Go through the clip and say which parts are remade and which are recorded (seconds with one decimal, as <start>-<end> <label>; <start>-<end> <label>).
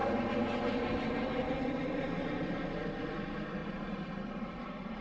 0.0-3.6 recorded; 3.6-5.0 remade